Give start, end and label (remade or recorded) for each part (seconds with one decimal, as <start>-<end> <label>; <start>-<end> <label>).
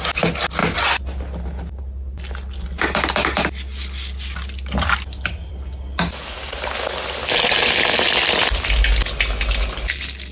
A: 0.0-10.3 recorded